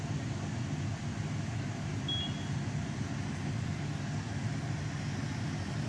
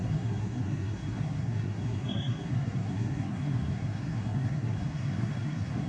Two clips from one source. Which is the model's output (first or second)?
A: second